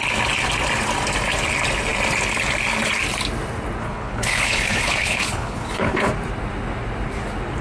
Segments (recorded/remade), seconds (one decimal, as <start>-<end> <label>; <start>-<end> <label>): 0.0-3.8 recorded; 3.8-6.1 remade; 6.1-7.6 recorded